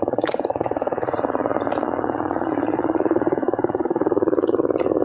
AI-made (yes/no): yes